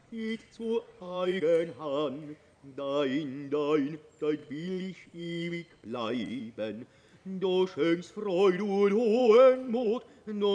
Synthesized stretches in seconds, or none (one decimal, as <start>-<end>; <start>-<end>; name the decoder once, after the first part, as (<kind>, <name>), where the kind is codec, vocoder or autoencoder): 0.0-1.4 (vocoder, Vocos); 4.4-6.4; 9.2-10.0